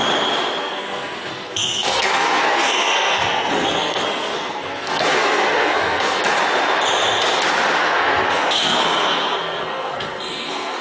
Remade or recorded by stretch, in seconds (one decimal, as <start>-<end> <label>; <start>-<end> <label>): 0.0-0.6 recorded; 0.6-6.2 remade; 6.2-7.8 recorded; 7.8-10.8 remade